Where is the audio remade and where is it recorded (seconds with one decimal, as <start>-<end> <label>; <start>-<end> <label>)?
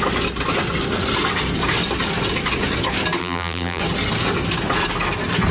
0.0-3.2 recorded; 3.2-3.8 remade; 3.8-5.5 recorded